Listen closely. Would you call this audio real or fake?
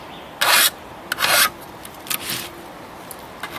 real